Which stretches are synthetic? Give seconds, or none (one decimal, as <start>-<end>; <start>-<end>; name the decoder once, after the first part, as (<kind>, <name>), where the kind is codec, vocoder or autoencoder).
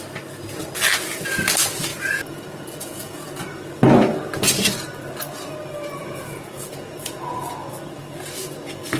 1.9-3.6 (vocoder, Vocos); 6.0-7.5